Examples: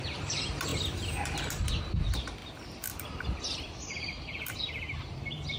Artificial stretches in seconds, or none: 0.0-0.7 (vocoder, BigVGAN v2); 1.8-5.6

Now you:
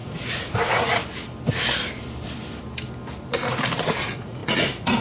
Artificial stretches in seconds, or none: 0.0-1.0 (vocoder, Vocos); 4.0-5.0

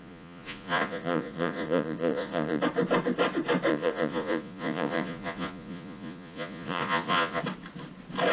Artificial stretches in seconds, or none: 0.0-2.6 (vocoder, Vocos); 3.7-7.4

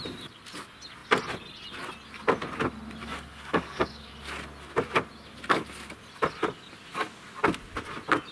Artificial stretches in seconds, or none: 3.0-4.1 (codec, DAC)

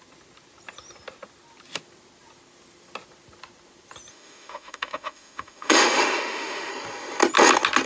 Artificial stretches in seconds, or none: 4.1-6.7 (autoencoder, DAC-VAE)

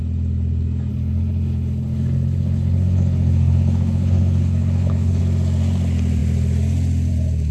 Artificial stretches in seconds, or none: 0.9-5.2 (codec, HILCodec)